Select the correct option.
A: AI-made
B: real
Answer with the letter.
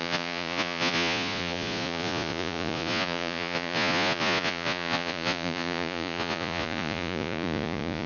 A